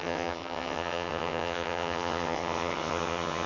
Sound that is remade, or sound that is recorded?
remade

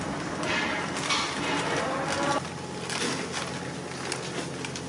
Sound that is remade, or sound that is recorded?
recorded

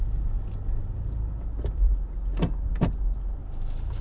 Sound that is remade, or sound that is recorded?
recorded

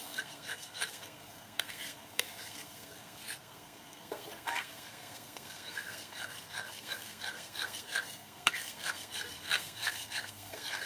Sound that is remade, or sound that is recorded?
remade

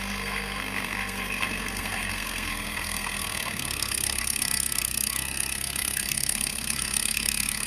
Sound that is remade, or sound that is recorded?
remade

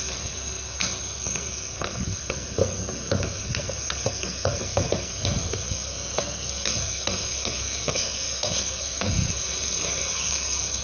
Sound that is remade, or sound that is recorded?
remade